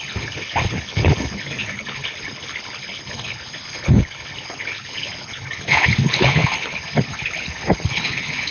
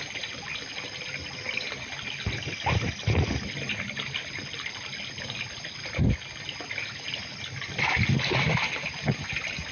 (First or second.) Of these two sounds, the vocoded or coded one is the first